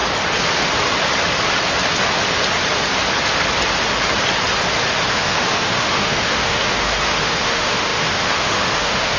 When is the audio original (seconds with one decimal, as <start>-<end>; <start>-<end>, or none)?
0.0-5.1